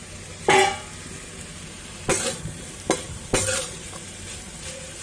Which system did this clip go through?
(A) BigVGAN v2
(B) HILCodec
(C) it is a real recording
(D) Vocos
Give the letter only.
C